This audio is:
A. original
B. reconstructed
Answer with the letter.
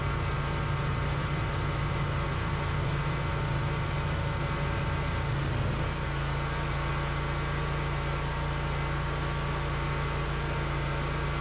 A